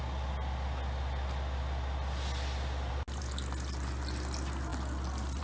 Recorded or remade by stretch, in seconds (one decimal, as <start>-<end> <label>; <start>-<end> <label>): 0.0-5.4 recorded

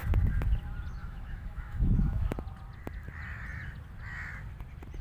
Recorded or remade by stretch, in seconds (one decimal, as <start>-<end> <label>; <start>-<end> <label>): 0.0-1.0 recorded; 1.0-2.3 remade; 2.3-5.0 recorded

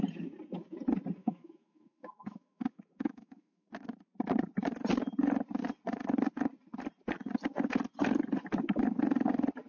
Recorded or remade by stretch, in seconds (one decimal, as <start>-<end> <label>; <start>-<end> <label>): 0.0-1.2 recorded; 1.2-3.7 remade; 3.7-9.7 recorded

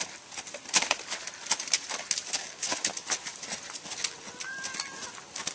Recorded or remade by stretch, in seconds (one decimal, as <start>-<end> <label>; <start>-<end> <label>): 0.0-5.5 recorded

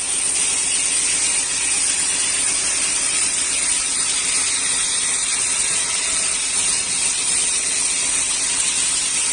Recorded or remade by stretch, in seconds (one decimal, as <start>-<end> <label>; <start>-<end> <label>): 0.0-9.3 recorded

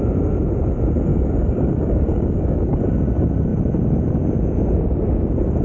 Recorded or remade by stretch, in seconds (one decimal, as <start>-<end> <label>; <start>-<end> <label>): 0.0-1.1 recorded; 1.1-2.8 remade; 2.8-5.6 recorded

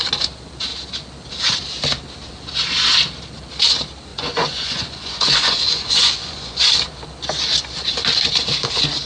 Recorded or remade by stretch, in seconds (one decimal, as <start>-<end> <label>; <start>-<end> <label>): 0.0-4.1 recorded; 4.1-6.7 remade; 6.7-9.1 recorded

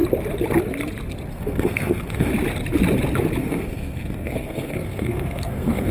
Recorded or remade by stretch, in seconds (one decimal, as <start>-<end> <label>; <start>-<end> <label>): 0.0-1.3 recorded; 1.3-2.3 remade; 2.3-3.4 recorded; 3.4-5.9 remade